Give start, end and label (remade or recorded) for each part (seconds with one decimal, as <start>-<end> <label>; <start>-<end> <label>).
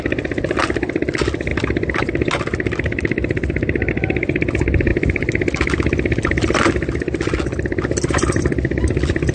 0.0-9.3 recorded